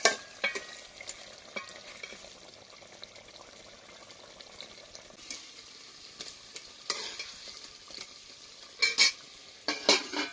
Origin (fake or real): real